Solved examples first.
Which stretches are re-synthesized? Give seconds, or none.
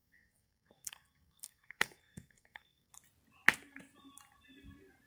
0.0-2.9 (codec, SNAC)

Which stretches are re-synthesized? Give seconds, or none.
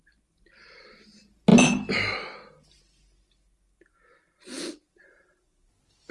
none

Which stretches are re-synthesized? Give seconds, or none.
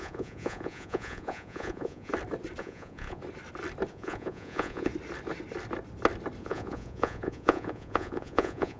0.0-2.1 (vocoder, Vocos); 2.6-3.2; 3.9-4.9; 6.4-8.8